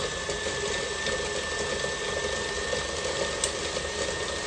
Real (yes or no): yes